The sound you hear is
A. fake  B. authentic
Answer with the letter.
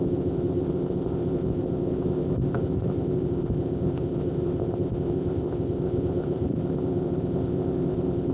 A